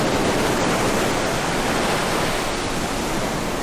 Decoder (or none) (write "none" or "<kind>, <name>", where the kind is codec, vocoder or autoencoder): none